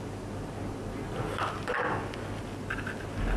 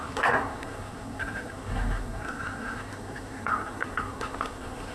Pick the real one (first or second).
first